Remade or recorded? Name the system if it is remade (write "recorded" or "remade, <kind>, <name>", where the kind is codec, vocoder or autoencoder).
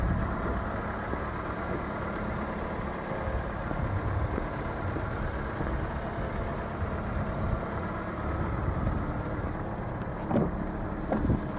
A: recorded